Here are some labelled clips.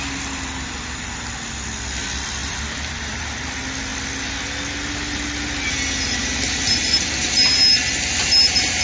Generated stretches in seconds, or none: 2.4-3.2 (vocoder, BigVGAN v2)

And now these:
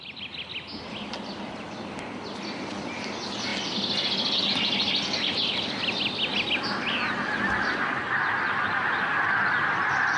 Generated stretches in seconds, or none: 8.0-9.0 (vocoder, BigVGAN v2)

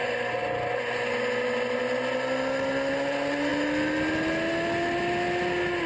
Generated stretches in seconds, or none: none

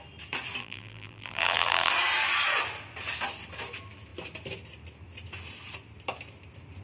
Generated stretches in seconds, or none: 0.6-1.9 (vocoder, BigVGAN v2)

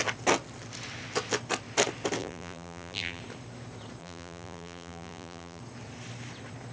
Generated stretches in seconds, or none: 2.2-3.2 (vocoder, BigVGAN v2); 4.0-5.6

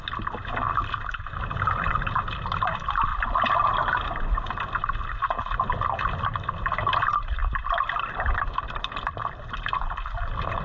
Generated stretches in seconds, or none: 7.4-8.2 (vocoder, BigVGAN v2)